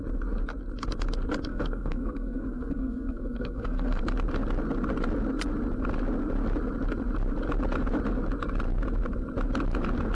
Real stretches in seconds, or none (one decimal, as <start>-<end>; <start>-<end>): 0.0-1.5; 4.0-10.1